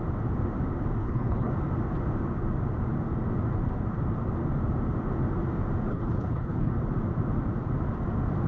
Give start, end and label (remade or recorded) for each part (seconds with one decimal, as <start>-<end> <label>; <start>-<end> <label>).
0.0-1.0 recorded; 1.0-1.5 remade; 1.5-5.9 recorded; 5.9-6.7 remade; 6.7-8.5 recorded